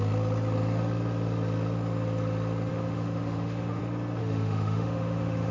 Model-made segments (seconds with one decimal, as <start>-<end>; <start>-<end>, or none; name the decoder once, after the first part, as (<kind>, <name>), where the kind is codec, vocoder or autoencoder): 2.7-3.8 (autoencoder, DAC-VAE); 4.2-5.5

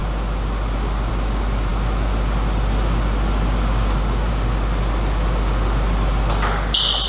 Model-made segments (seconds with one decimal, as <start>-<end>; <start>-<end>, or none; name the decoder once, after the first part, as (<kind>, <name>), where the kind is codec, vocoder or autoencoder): none

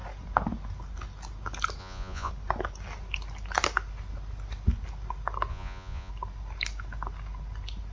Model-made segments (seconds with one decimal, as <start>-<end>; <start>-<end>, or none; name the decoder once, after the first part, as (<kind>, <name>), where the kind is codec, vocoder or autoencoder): 1.8-2.3 (vocoder, Vocos); 5.5-6.1